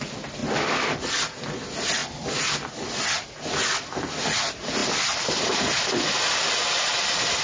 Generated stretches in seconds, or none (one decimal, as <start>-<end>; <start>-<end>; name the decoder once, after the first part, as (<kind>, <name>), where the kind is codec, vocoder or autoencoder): none